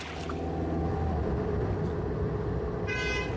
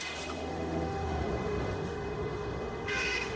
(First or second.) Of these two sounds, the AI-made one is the second